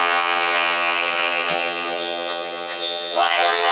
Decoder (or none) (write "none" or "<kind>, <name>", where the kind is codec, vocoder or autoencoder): vocoder, HiFi-GAN